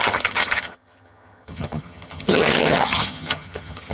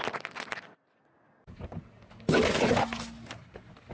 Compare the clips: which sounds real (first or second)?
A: second